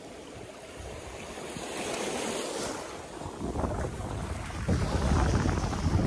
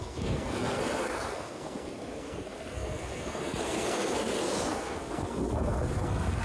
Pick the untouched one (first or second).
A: first